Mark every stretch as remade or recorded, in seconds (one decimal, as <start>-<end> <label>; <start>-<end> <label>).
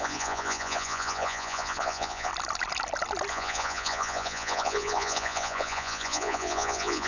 0.0-2.3 remade; 2.3-3.3 recorded; 3.3-7.1 remade